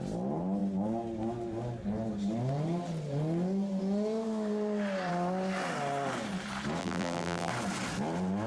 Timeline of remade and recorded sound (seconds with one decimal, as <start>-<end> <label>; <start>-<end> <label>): 0.0-6.8 recorded; 6.8-7.5 remade; 7.5-8.5 recorded

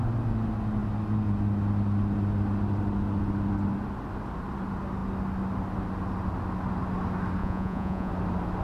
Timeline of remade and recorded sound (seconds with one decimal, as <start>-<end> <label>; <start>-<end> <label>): 0.0-7.4 recorded; 7.4-8.1 remade; 8.1-8.6 recorded

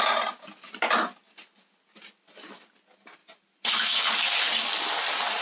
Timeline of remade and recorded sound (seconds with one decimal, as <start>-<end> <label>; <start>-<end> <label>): 0.0-5.4 recorded

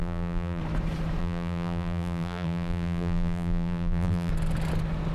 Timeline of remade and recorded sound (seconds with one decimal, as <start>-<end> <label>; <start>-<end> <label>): 0.0-0.6 remade; 0.6-1.2 recorded; 1.2-4.3 remade; 4.3-5.1 recorded

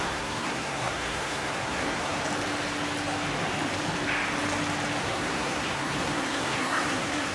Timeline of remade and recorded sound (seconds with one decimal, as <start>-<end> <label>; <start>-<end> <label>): 0.0-2.2 remade; 2.2-5.0 recorded; 5.0-7.3 remade

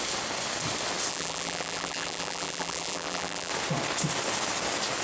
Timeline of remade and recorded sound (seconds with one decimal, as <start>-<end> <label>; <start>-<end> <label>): 0.0-1.1 recorded; 1.1-3.5 remade; 3.5-5.0 recorded

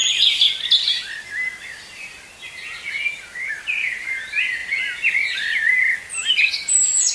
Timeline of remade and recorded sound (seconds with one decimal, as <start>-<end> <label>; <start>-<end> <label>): 0.0-7.1 recorded